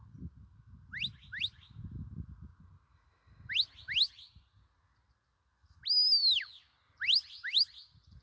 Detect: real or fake real